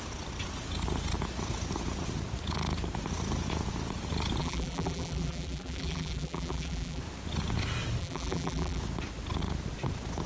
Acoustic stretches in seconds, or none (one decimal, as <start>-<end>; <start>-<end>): 0.0-4.4; 7.0-8.0; 8.8-10.3